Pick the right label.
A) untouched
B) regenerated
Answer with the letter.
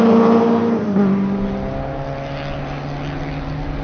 A